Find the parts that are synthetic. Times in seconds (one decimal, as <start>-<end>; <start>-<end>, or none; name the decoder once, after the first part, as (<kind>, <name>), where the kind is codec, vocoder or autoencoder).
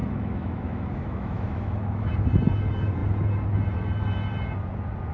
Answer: 0.0-2.1 (autoencoder, DAC-VAE)